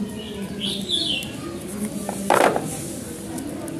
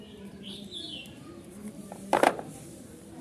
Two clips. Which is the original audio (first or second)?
first